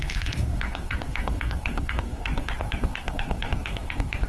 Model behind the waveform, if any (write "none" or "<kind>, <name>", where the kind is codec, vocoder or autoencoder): codec, SNAC